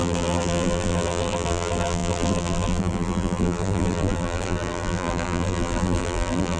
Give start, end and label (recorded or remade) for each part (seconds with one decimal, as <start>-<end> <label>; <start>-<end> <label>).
0.0-6.6 remade